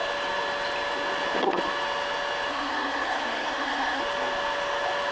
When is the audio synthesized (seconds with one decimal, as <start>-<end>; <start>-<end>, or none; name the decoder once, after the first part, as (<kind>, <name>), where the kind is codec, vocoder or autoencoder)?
2.5-4.0 (codec, SNAC)